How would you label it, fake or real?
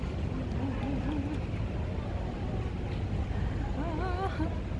real